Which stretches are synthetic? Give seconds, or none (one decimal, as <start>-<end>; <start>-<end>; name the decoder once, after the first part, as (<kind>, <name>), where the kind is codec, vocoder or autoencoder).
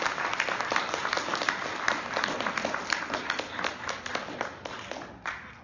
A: none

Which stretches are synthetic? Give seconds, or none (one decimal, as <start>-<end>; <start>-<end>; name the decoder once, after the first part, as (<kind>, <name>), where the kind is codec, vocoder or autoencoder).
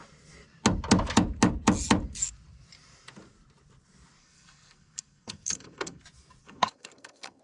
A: 4.2-6.0 (codec, SNAC); 6.4-7.4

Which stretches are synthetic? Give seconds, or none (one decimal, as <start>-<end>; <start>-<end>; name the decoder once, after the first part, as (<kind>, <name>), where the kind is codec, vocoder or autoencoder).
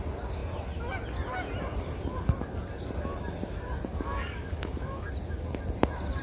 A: 3.9-5.1 (codec, DAC)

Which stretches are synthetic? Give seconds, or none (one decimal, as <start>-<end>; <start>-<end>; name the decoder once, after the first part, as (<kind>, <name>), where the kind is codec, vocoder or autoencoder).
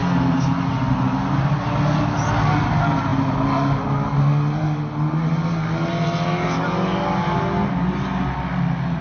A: none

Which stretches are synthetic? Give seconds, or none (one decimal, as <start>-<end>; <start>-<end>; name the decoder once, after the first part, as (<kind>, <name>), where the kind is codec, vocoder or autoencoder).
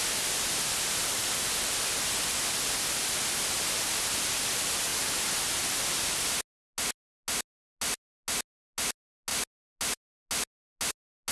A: none